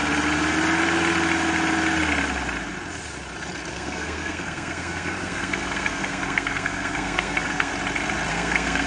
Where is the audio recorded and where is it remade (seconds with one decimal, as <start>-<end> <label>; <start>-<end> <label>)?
0.0-3.7 recorded; 3.7-7.7 remade; 7.7-8.3 recorded; 8.3-8.9 remade